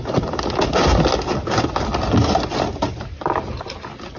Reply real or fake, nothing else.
real